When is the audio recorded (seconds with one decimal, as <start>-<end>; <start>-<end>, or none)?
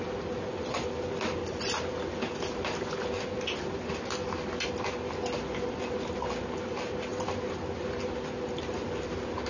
0.0-9.5